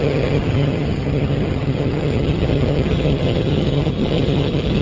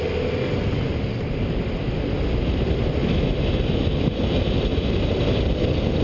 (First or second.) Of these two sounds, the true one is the second